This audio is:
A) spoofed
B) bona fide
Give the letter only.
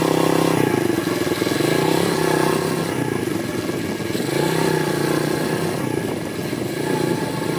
B